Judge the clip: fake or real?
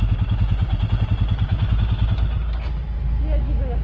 real